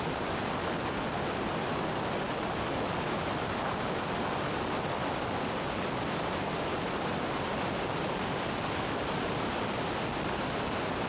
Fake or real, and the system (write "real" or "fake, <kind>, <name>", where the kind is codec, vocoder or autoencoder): real